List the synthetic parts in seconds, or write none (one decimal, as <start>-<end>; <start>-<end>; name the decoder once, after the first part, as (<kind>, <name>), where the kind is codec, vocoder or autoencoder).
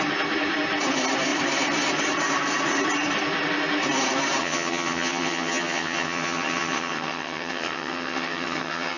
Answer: 4.4-9.0 (vocoder, HiFi-GAN)